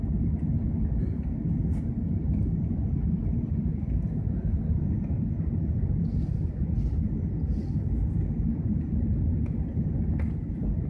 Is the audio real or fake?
real